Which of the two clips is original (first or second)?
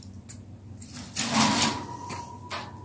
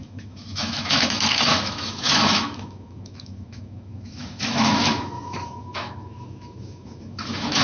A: first